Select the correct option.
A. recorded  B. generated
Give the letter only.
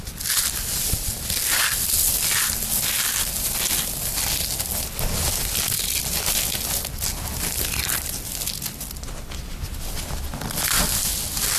A